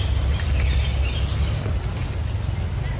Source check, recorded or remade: recorded